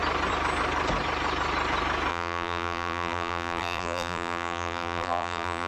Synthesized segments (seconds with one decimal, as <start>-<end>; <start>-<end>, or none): 2.1-5.7